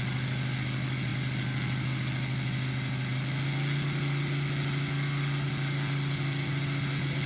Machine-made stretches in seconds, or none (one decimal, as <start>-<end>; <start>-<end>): none